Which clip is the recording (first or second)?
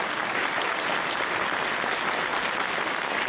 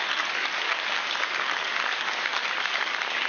first